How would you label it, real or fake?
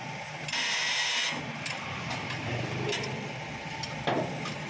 real